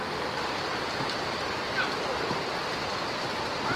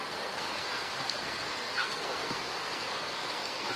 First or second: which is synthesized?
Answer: second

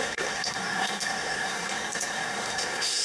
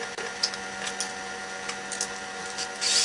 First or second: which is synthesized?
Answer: first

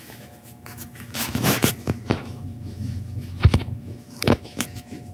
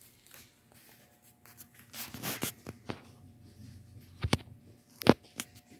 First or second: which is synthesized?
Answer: first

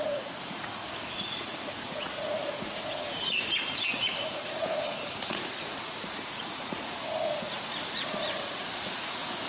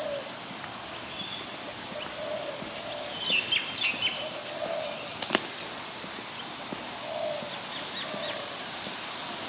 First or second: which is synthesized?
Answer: first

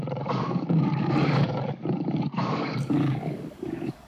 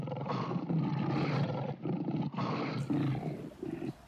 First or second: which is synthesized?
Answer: first